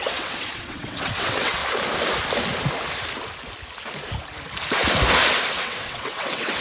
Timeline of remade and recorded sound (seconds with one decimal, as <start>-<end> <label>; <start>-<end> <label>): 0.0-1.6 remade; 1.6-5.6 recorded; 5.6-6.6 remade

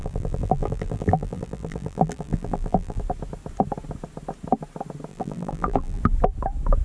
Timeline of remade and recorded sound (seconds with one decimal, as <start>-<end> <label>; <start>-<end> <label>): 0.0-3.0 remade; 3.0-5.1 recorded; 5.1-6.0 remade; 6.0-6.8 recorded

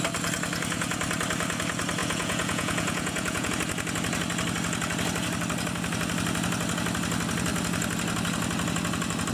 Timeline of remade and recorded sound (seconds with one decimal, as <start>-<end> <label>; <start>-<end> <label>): 0.0-2.0 recorded; 2.0-3.5 remade; 3.5-9.3 recorded

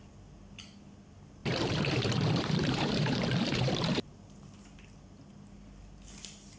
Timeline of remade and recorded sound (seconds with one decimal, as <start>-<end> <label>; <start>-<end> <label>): 0.0-1.4 recorded; 1.4-4.6 remade; 4.6-6.6 recorded